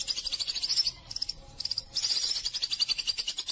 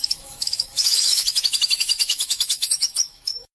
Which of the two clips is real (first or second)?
first